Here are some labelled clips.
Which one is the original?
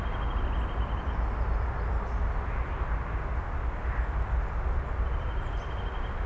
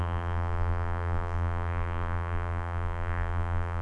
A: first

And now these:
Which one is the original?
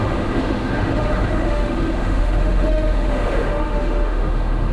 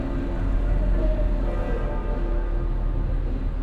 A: second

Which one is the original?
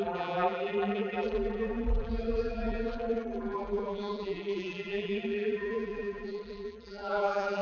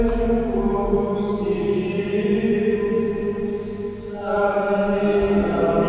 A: second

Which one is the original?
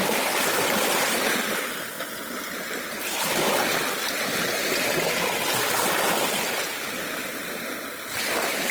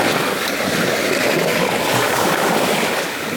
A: first